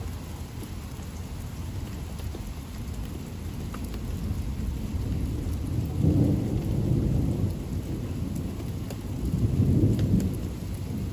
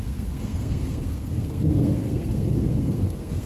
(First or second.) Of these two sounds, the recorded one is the first